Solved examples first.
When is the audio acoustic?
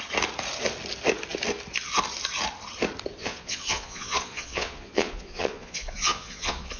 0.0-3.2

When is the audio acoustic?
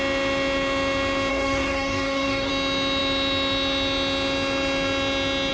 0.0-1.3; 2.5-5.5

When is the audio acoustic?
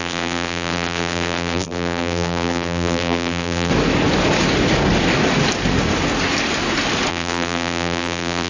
3.7-7.1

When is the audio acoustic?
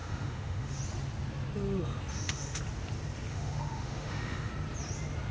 0.8-2.1; 2.6-3.3; 4.5-5.3